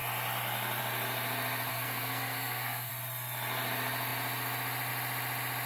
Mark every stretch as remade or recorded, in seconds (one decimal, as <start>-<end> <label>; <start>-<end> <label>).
0.0-1.7 recorded; 1.7-2.9 remade; 2.9-5.7 recorded